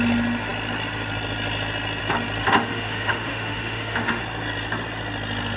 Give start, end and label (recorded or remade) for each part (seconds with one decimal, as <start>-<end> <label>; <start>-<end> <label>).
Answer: 0.0-2.4 recorded; 2.4-4.2 remade; 4.2-5.6 recorded